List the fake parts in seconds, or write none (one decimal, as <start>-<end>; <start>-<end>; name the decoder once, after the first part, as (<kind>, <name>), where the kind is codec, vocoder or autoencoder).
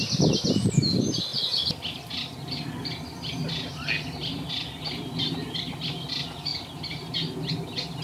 none